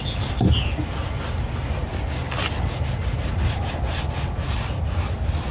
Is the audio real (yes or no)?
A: yes